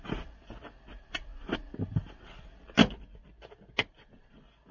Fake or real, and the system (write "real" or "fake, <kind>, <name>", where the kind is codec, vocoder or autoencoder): real